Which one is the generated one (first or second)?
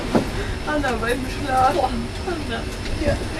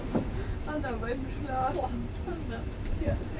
second